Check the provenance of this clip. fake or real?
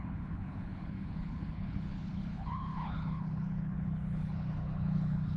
fake